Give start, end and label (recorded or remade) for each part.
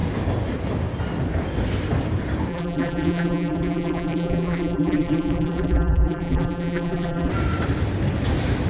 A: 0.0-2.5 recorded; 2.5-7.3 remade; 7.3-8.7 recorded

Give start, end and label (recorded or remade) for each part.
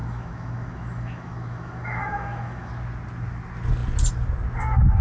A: 0.0-2.7 remade; 2.7-5.0 recorded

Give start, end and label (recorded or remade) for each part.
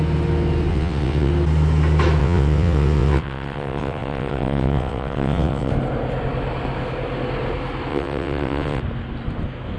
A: 0.0-0.7 recorded; 0.7-1.3 remade; 1.3-2.2 recorded; 2.2-5.7 remade; 5.7-7.9 recorded; 7.9-8.8 remade; 8.8-9.8 recorded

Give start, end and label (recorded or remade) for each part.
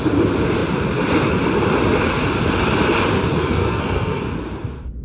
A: 0.0-3.3 recorded; 3.3-4.2 remade; 4.2-5.0 recorded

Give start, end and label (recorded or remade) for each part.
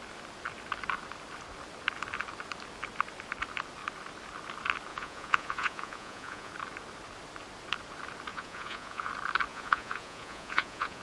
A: 0.0-4.9 recorded; 4.9-6.5 remade; 6.5-8.3 recorded; 8.3-9.1 remade; 9.1-9.5 recorded; 9.5-11.0 remade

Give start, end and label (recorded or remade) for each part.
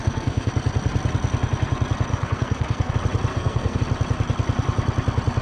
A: 0.0-0.5 remade; 0.5-2.1 recorded; 2.1-2.9 remade; 2.9-3.3 recorded; 3.3-3.8 remade; 3.8-5.4 recorded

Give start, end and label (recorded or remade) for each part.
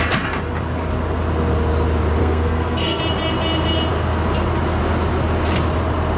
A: 0.0-2.2 recorded; 2.2-3.0 remade; 3.0-6.2 recorded